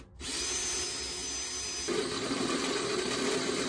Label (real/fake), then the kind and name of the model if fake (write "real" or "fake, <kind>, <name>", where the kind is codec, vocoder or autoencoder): real